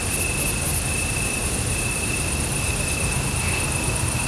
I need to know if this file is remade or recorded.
recorded